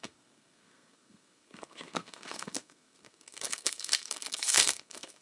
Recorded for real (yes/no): no